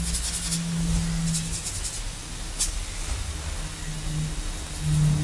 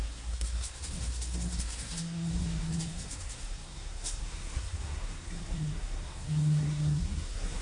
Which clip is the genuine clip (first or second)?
first